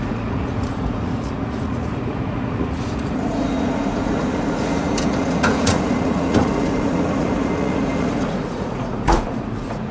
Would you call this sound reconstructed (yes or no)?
yes